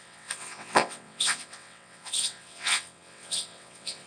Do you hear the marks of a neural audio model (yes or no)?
yes